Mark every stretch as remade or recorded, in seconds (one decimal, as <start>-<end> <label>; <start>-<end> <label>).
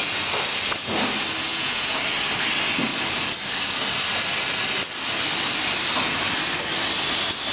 0.0-1.5 recorded; 1.5-2.0 remade; 2.0-7.5 recorded